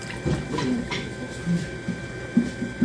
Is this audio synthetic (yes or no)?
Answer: no